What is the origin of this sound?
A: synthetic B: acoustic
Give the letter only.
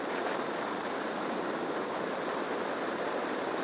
A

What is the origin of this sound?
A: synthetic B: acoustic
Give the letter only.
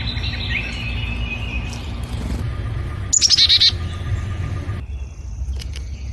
B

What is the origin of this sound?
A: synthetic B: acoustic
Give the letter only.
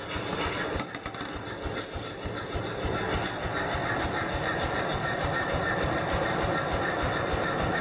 B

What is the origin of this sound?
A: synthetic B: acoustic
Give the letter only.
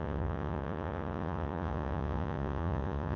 A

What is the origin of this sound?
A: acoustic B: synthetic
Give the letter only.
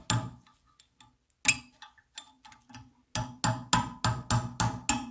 A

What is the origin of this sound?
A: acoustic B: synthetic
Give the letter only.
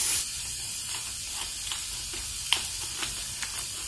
A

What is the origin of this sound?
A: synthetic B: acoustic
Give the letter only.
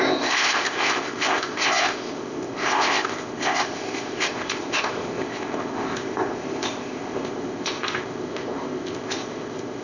A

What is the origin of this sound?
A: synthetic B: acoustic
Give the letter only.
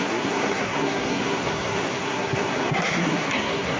A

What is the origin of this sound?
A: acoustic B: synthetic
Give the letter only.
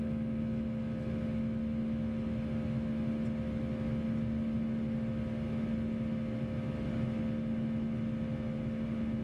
A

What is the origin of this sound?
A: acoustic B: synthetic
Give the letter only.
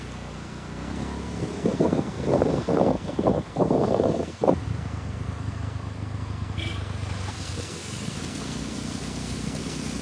B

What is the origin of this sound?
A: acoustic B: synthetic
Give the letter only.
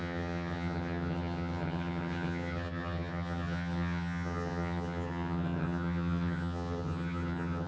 B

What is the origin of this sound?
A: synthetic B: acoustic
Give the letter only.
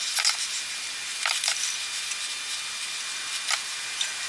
B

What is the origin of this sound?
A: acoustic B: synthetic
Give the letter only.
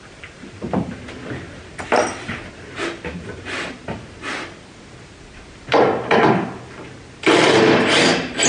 A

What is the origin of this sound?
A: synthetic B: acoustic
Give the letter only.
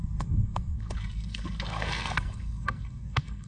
A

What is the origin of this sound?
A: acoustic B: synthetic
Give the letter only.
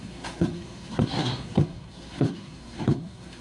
B